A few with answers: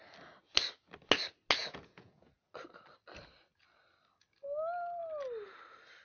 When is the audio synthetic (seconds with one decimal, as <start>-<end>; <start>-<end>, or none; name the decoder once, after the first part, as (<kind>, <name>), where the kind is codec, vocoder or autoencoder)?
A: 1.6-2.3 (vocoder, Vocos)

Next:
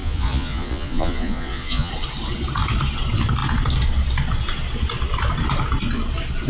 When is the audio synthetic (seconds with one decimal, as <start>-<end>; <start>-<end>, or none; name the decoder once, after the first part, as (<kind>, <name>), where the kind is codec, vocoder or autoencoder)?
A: 0.0-1.9 (vocoder, Vocos)

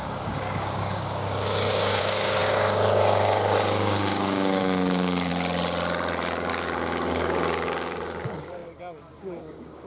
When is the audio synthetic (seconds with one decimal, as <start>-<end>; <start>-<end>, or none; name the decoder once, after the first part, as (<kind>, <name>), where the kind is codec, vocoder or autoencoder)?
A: 0.0-5.3 (codec, DAC); 6.5-9.9